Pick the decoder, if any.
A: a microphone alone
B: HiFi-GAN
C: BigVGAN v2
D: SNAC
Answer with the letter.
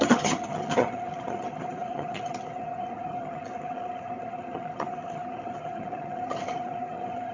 B